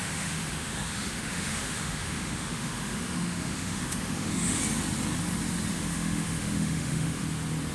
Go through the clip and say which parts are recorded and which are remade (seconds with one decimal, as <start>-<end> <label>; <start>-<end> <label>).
0.0-4.6 remade; 4.6-5.7 recorded; 5.7-7.2 remade; 7.2-7.7 recorded